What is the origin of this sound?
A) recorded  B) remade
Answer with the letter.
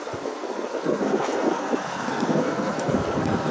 B